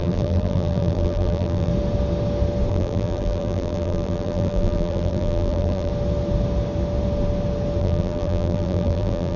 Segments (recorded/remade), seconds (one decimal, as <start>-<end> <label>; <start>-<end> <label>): 0.0-1.7 remade; 1.7-2.7 recorded; 2.7-5.9 remade; 5.9-7.8 recorded; 7.8-9.4 remade